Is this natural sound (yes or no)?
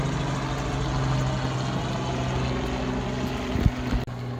yes